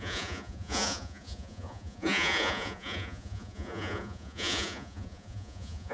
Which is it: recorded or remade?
remade